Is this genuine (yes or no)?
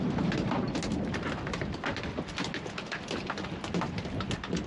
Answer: yes